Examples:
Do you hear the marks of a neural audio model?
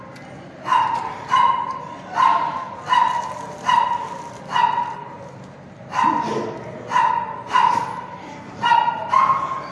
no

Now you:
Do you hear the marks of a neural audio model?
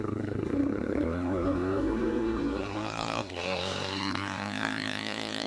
yes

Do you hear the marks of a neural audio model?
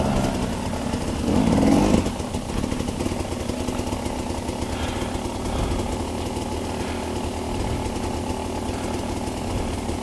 no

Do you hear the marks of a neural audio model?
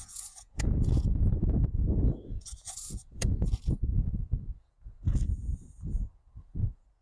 yes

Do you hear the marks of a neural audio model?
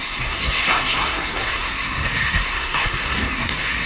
yes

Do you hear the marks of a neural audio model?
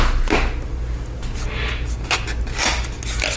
no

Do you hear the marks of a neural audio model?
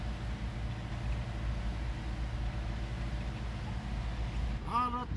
no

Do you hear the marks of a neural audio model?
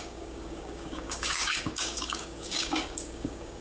yes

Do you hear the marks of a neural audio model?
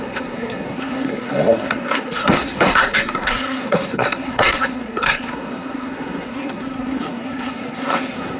yes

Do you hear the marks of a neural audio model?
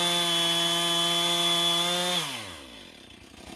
no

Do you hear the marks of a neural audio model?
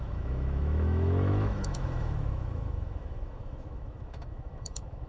yes